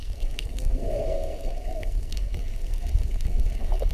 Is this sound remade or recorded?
remade